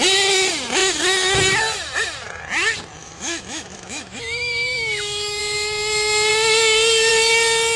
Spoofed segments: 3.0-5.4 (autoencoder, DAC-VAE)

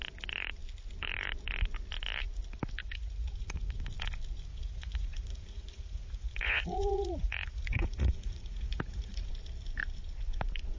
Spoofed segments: 2.8-3.8 (vocoder, Vocos); 4.5-9.3

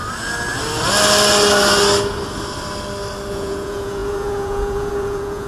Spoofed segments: 3.3-5.5 (vocoder, Vocos)